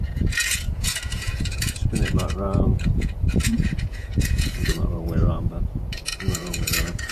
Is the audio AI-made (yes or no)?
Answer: yes